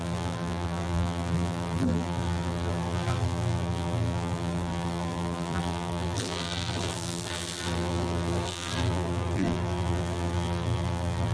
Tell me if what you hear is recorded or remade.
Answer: remade